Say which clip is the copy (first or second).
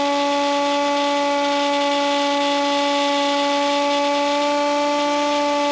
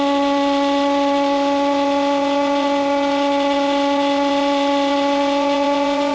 second